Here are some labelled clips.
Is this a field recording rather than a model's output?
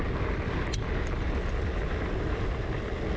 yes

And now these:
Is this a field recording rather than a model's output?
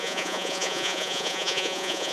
no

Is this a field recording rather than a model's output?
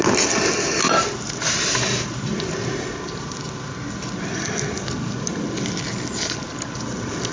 yes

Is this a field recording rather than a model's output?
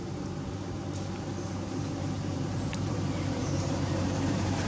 no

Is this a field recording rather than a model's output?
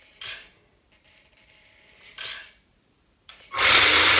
no